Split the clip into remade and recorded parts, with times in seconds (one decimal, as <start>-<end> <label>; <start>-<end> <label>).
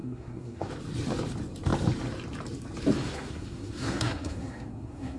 0.0-0.7 remade; 0.7-3.0 recorded; 3.0-5.2 remade